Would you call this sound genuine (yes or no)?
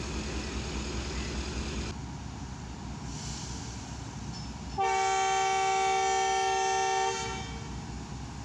yes